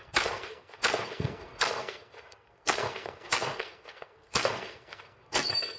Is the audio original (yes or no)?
no